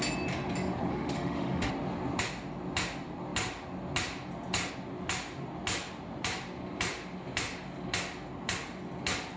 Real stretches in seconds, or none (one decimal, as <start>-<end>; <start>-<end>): 0.0-0.9; 1.7-9.4